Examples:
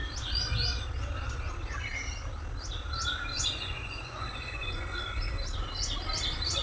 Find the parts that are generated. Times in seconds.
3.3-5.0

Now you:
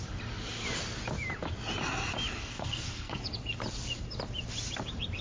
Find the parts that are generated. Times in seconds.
2.4-3.2

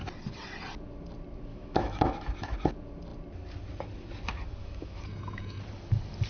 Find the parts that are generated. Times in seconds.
1.5-2.1; 4.6-5.6

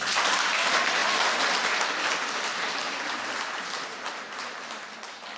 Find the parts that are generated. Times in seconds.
2.5-3.1

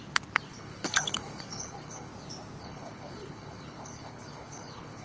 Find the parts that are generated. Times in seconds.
0.5-2.1; 2.6-5.0

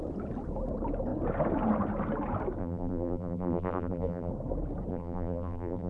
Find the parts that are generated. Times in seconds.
2.6-4.3; 4.9-5.9

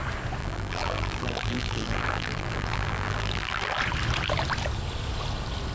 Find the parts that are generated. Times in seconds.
0.4-3.8

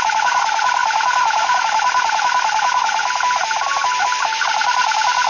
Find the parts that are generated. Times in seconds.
0.0-0.8; 1.4-3.0; 4.5-5.3